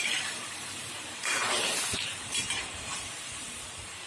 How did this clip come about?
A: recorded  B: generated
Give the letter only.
B